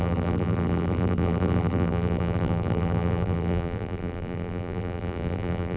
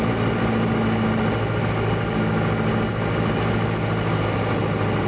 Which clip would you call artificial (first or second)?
first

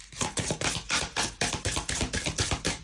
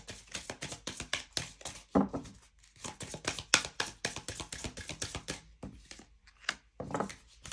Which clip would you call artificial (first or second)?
first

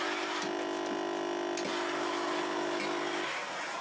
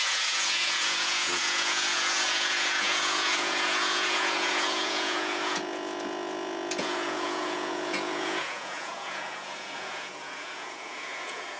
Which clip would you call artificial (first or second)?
second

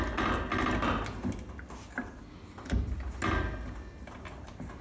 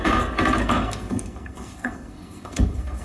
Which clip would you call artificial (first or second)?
second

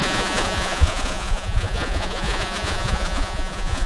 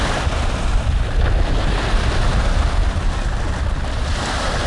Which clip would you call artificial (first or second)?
first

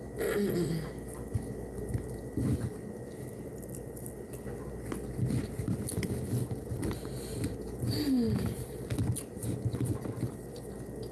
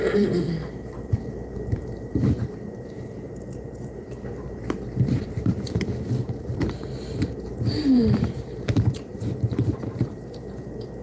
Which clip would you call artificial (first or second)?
second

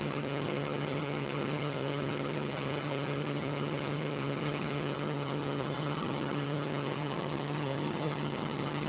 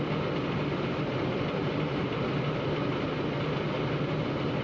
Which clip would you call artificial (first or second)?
first